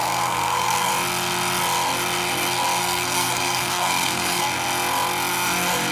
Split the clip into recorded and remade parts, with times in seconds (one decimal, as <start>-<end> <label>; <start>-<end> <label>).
0.0-0.9 remade; 0.9-2.8 recorded; 2.8-4.4 remade; 4.4-5.9 recorded